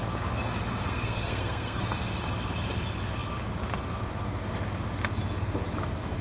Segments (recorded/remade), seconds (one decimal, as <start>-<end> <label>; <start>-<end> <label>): 0.0-0.8 recorded; 0.8-1.8 remade; 1.8-6.2 recorded